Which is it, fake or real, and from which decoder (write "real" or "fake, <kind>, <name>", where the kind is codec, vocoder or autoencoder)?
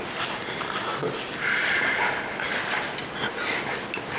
real